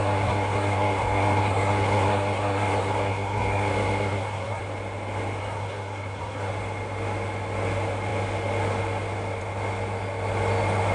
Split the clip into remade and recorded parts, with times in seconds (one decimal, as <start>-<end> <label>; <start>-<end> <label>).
0.0-4.6 remade; 4.6-5.4 recorded; 5.4-6.5 remade; 6.5-10.9 recorded